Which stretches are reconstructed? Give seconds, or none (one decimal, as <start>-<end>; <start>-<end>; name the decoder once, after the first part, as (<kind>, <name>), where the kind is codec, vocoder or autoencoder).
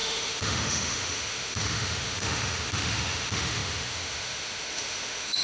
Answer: 0.0-5.4 (autoencoder, DAC-VAE)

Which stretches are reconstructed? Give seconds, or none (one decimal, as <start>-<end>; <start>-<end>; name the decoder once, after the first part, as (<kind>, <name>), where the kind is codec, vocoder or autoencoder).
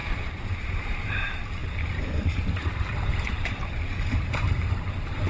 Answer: 0.0-5.3 (vocoder, BigVGAN v2)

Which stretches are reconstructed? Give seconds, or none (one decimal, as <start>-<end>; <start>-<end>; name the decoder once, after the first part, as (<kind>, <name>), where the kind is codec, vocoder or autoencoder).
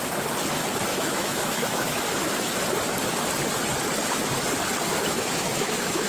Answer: 0.9-2.0 (autoencoder, DAC-VAE); 5.0-6.1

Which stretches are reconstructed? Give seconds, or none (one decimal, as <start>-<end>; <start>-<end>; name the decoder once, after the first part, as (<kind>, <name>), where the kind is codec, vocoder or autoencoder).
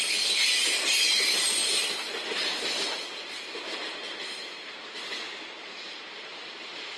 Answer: none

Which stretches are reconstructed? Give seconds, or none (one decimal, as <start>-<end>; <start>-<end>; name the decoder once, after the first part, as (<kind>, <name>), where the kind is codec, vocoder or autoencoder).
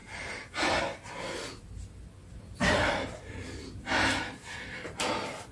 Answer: 0.0-0.8 (vocoder, BigVGAN v2); 2.2-5.5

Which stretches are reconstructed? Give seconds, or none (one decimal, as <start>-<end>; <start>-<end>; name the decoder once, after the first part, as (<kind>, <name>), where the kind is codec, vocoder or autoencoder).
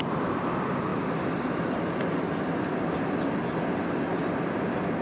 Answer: none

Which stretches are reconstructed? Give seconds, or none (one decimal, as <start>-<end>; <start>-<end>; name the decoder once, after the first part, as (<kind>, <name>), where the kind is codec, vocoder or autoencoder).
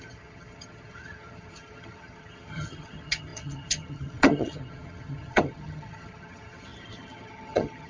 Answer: 0.0-7.9 (vocoder, HiFi-GAN)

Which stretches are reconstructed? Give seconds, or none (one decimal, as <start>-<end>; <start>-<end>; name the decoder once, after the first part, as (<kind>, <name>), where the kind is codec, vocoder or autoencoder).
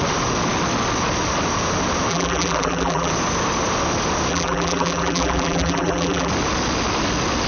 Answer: 2.1-3.1 (vocoder, BigVGAN v2); 4.3-6.3